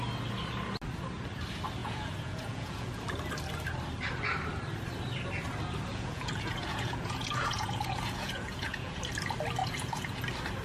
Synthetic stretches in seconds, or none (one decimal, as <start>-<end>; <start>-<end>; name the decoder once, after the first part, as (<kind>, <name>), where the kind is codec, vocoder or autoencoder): 1.8-3.0 (vocoder, Vocos); 5.9-9.0; 9.6-10.2